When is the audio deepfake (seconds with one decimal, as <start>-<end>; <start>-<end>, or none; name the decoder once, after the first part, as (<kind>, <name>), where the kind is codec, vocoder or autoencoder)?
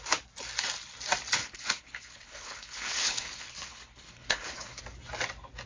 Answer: 1.4-4.8 (codec, HILCodec)